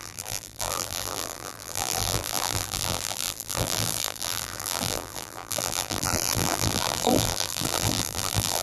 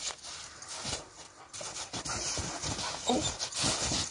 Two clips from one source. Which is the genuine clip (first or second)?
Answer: second